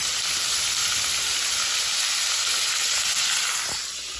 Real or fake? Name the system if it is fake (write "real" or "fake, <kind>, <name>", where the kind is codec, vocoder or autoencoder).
real